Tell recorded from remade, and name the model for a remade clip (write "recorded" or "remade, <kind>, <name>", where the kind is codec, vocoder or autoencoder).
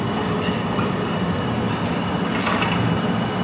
recorded